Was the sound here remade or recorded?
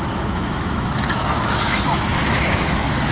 remade